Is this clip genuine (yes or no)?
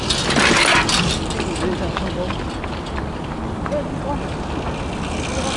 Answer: yes